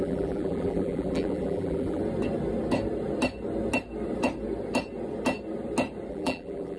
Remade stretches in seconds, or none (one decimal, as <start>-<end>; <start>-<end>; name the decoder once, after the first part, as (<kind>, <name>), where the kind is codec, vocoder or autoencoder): 0.0-2.0 (vocoder, BigVGAN v2); 6.1-6.8